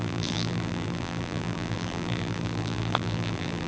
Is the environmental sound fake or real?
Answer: fake